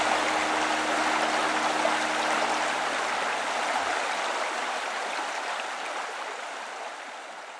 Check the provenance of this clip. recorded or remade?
recorded